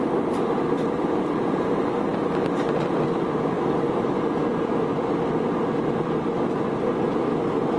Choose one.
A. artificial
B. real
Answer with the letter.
B